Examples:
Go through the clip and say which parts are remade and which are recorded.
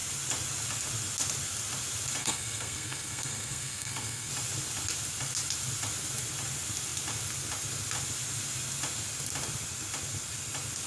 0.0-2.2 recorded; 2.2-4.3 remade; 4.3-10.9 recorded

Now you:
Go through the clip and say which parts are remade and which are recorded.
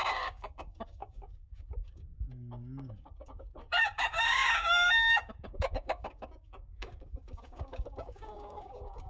0.0-9.1 remade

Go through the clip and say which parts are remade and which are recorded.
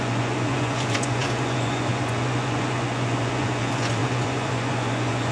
0.0-5.3 remade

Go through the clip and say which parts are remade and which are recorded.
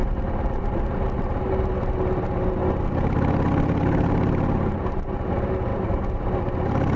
0.0-7.0 recorded